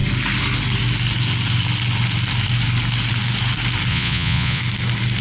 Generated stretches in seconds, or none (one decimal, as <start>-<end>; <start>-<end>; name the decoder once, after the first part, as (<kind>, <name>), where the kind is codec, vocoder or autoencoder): 3.9-4.6 (vocoder, Vocos)